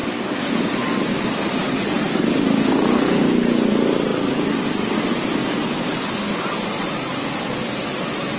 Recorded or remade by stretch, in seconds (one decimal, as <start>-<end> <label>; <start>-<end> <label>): 0.0-8.4 recorded

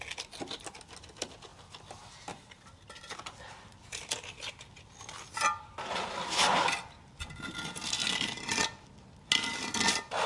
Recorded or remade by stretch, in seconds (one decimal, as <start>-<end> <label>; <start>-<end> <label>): 0.0-10.3 recorded

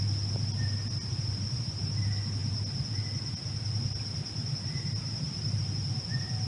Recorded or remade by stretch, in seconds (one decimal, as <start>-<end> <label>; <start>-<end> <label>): 0.0-6.5 recorded

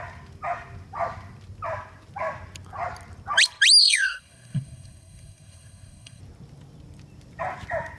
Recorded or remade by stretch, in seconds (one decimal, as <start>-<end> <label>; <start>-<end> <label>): 0.0-3.8 recorded; 3.8-6.2 remade; 6.2-8.0 recorded

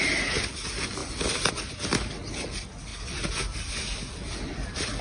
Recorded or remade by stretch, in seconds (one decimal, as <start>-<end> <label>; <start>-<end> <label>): 0.0-5.0 recorded

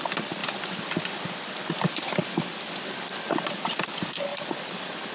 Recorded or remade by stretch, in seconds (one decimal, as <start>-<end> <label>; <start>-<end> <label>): 0.0-5.1 recorded

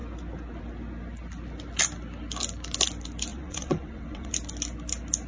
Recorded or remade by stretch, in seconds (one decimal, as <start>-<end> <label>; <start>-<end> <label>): 0.0-3.3 recorded; 3.3-4.3 remade; 4.3-5.3 recorded

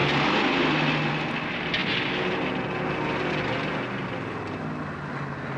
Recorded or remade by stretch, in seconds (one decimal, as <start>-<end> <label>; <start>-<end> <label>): 0.0-5.6 recorded